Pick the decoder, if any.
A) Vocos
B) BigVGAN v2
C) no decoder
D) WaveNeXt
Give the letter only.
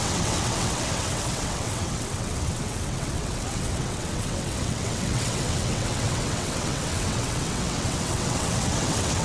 D